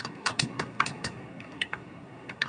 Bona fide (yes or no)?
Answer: no